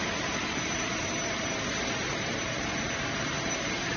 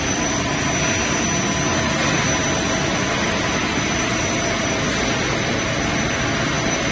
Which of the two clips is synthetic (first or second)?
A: first